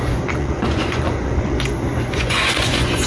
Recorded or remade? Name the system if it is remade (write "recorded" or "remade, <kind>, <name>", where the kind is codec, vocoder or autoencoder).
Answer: remade, vocoder, Vocos